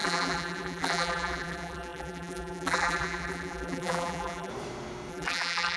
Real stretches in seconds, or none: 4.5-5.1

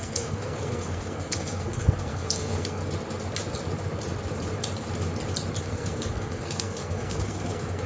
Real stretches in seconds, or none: 2.8-5.6

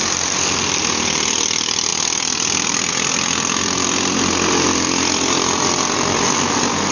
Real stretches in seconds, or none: 0.0-6.9

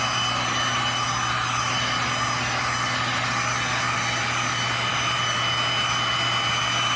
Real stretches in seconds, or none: 0.0-7.0